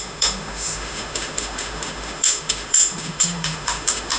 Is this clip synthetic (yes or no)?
yes